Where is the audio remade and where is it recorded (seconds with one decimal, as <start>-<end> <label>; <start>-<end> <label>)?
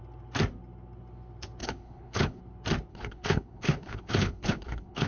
0.0-1.6 recorded; 1.6-2.4 remade; 2.4-2.9 recorded; 2.9-5.1 remade